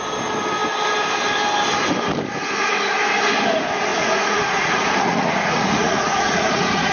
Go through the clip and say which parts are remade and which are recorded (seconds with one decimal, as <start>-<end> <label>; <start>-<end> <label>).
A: 0.0-3.9 recorded; 3.9-6.9 remade